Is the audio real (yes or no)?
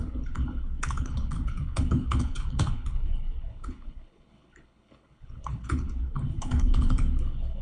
no